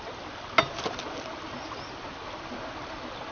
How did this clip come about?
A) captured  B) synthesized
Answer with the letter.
A